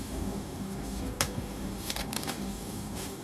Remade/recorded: remade